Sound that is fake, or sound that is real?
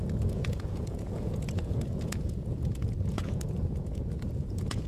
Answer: fake